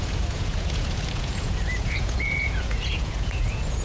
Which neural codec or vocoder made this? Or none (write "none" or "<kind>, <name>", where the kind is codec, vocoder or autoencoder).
vocoder, Vocos